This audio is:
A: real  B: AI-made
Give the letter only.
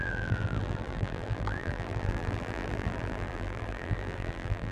B